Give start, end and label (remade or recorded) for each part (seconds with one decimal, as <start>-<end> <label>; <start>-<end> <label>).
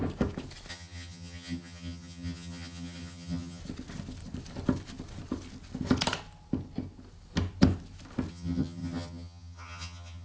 0.0-0.7 recorded; 0.7-3.6 remade; 3.6-8.3 recorded; 8.3-10.2 remade